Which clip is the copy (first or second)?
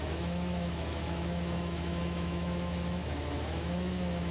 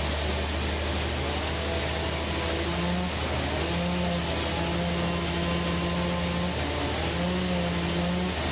first